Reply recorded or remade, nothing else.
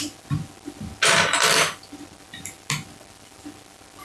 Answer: recorded